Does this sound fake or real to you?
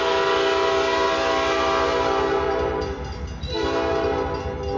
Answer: real